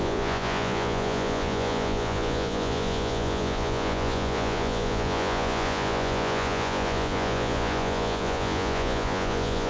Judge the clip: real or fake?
fake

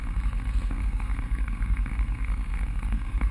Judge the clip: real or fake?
fake